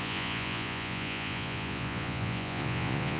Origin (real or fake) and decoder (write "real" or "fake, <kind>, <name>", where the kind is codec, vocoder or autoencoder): fake, vocoder, Vocos